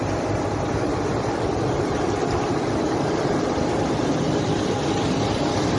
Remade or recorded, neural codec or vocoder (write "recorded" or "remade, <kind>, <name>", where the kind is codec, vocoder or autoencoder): remade, vocoder, BigVGAN v2